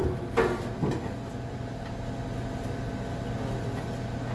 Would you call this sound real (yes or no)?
yes